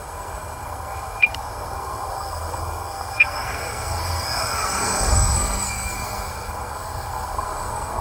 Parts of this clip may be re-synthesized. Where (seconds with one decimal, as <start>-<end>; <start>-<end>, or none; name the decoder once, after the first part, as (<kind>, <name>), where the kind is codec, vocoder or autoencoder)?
0.0-8.0 (codec, SNAC)